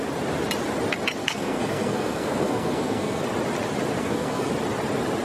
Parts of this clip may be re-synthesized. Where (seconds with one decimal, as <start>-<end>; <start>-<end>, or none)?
1.2-3.2; 4.0-4.5